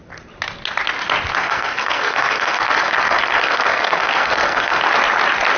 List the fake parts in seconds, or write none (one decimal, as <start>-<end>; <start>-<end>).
1.4-4.8

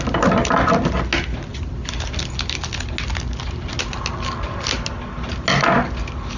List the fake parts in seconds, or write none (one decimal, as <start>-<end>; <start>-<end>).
none

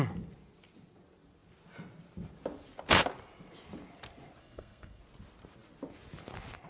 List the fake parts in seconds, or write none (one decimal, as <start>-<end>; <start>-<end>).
4.4-5.0

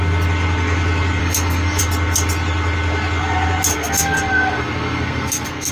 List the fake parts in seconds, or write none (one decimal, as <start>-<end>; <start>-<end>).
1.2-1.8; 3.7-5.7

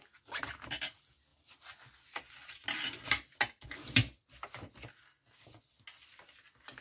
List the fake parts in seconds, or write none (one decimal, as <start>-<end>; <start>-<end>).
none

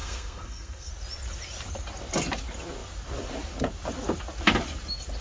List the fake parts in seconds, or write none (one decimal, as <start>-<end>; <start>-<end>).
0.0-0.9